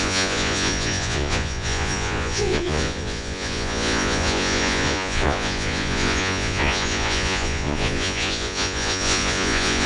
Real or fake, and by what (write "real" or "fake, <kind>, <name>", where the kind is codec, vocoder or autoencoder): fake, vocoder, Vocos